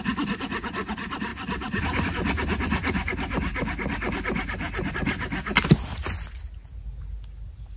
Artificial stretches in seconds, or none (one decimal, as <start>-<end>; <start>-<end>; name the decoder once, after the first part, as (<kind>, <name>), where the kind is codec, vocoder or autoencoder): none